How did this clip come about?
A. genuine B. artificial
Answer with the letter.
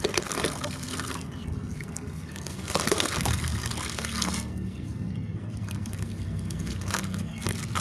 B